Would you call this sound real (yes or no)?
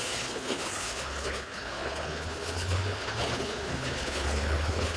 no